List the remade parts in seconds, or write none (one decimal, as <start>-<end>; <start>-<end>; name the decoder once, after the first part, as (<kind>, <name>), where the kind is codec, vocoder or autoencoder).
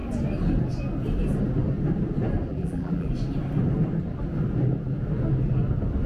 2.5-3.1 (vocoder, BigVGAN v2)